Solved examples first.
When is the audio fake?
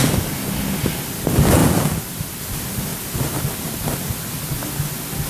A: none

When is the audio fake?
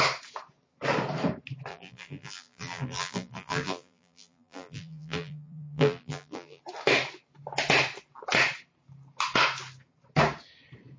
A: 1.7-6.6 (vocoder, BigVGAN v2)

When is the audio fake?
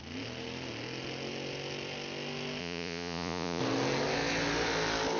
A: 2.6-3.6 (vocoder, Vocos)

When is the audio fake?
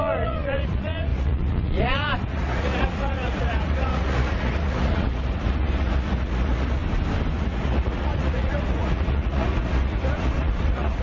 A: 0.0-6.8 (vocoder, Vocos); 7.4-11.0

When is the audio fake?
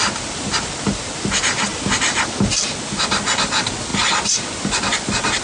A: none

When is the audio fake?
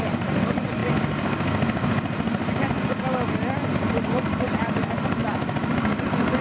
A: 0.0-0.8 (vocoder, BigVGAN v2); 3.7-5.2